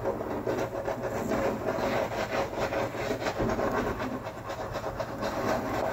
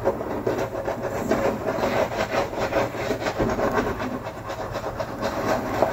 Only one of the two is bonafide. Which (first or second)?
first